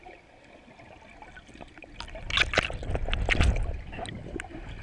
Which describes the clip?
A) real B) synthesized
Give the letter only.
A